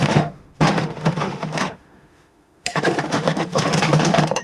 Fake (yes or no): yes